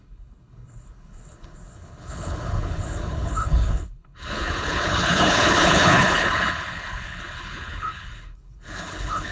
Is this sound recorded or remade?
remade